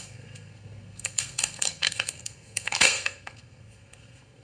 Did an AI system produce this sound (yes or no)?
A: yes